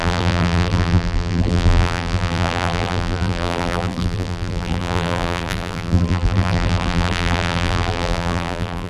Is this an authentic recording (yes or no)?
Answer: no